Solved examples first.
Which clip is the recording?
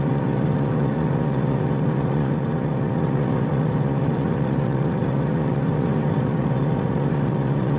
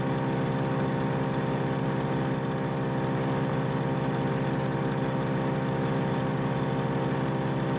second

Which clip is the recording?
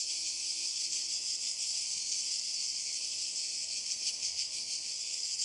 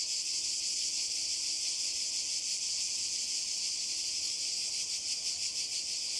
second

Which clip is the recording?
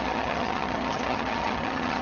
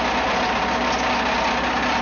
second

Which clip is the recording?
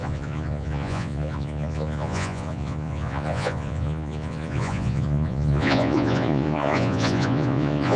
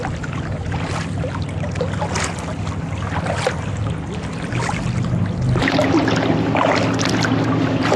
second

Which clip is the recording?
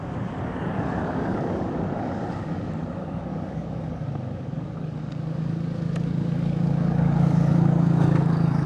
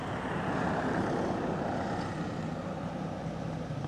second